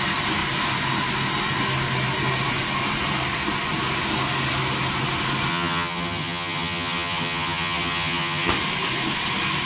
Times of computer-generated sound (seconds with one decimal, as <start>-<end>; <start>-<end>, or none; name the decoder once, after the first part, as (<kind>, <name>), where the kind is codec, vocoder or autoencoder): 5.5-8.5 (vocoder, HiFi-GAN)